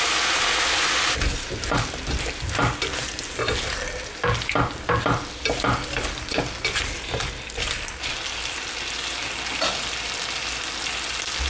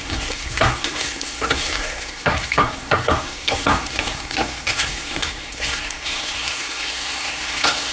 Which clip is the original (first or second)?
first